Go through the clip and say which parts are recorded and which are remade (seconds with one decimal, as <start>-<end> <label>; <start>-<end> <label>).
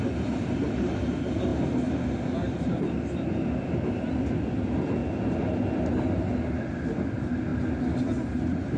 0.0-8.8 recorded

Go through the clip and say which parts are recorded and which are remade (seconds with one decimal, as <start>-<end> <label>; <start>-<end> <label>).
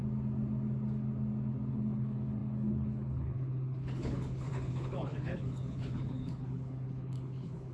0.0-1.7 recorded; 1.7-7.7 remade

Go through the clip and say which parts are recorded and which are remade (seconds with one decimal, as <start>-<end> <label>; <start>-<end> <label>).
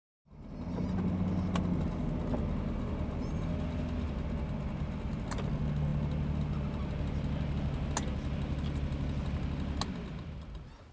0.0-10.9 recorded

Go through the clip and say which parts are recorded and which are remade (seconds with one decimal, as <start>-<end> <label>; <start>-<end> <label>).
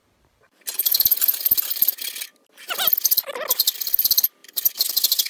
0.0-1.9 remade; 1.9-4.4 recorded; 4.4-5.3 remade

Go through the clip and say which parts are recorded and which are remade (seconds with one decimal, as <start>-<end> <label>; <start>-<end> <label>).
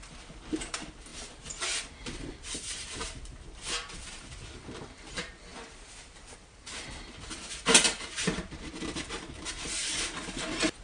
0.0-10.8 remade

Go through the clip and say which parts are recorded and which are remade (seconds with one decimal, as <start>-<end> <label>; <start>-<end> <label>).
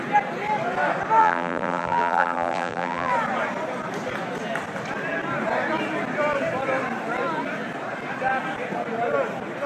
0.0-1.2 recorded; 1.2-3.1 remade; 3.1-9.7 recorded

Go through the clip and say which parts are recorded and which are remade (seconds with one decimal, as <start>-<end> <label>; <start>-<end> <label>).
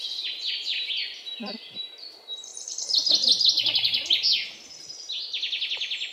0.0-6.1 recorded